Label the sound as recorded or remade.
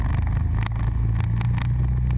recorded